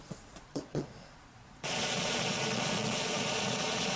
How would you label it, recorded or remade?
remade